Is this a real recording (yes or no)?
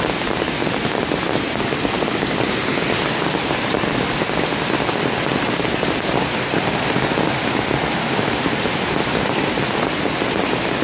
yes